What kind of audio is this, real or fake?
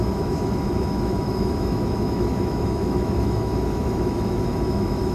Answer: fake